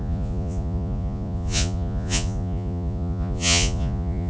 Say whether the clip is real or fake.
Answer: fake